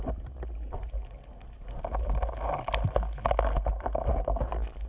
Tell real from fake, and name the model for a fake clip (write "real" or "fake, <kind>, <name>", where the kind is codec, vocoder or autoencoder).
real